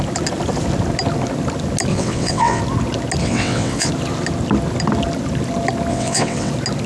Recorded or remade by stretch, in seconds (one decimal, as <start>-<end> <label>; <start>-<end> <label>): 0.0-1.9 recorded; 1.9-2.6 remade; 2.6-3.2 recorded; 3.2-3.9 remade; 3.9-5.9 recorded; 5.9-6.5 remade; 6.5-6.9 recorded

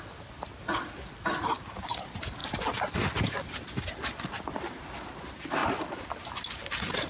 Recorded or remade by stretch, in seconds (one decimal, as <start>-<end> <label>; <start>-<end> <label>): 0.0-7.1 recorded